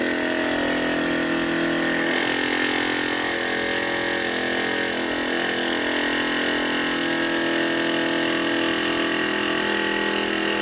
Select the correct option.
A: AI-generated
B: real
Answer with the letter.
B